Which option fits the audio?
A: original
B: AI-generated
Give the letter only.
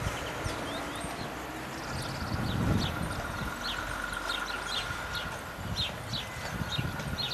A